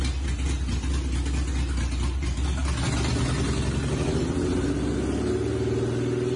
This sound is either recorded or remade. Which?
recorded